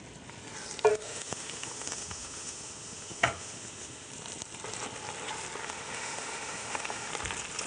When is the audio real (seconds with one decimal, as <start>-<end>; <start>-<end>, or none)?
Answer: 0.0-0.9; 4.1-5.6; 7.1-7.7